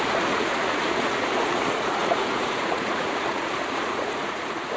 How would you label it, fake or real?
fake